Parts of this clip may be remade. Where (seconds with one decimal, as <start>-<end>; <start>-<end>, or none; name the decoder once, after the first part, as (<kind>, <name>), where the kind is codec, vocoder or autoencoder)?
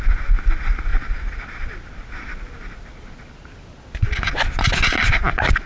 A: none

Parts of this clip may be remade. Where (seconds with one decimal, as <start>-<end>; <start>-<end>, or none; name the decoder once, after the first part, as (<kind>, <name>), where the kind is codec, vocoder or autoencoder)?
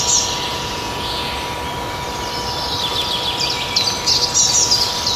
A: 0.5-1.3 (vocoder, Vocos)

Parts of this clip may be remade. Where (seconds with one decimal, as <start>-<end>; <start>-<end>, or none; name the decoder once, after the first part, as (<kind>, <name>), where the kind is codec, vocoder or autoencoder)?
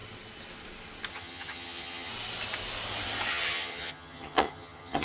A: 1.1-2.1 (vocoder, HiFi-GAN); 3.3-5.0